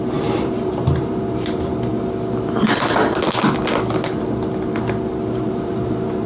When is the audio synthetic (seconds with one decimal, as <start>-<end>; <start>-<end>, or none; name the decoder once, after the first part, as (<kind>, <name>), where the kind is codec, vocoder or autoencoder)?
0.0-1.9 (vocoder, BigVGAN v2); 5.4-6.3